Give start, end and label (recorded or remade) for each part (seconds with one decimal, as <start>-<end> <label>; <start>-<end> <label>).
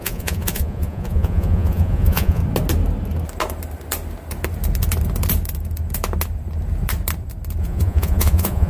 0.0-2.4 remade; 2.4-7.6 recorded; 7.6-8.7 remade